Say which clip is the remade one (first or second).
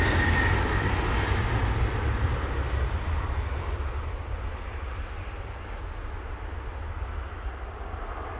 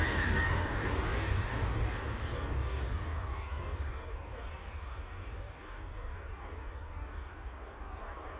second